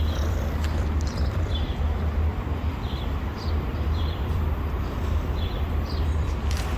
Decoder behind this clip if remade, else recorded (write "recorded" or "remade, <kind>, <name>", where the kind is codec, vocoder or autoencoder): remade, vocoder, BigVGAN v2